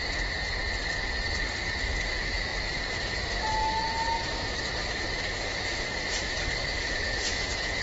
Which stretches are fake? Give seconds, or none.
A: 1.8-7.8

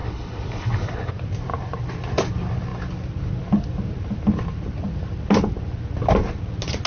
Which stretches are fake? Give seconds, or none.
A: 0.0-1.1

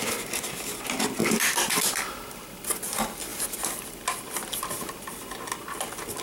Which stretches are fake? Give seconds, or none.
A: 1.2-2.7; 3.3-5.0

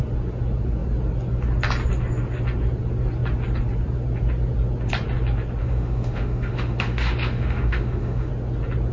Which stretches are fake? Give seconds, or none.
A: 5.6-8.3